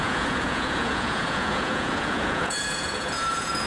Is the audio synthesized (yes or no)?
yes